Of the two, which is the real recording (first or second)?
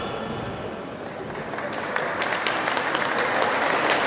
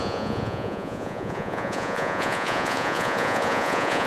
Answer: first